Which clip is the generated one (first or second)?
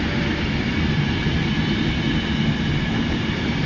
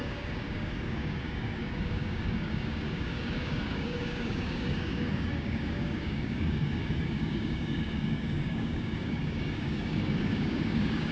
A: second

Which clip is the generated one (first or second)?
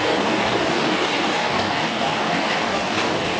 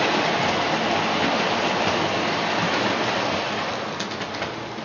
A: first